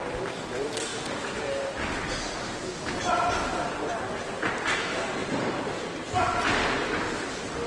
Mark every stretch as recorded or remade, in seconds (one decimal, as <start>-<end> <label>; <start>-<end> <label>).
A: 0.0-5.2 recorded; 5.2-6.2 remade; 6.2-7.7 recorded